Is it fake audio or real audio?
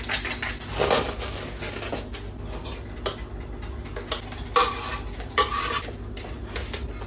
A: real